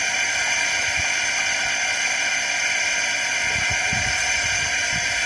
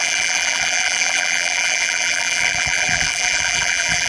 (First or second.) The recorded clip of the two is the first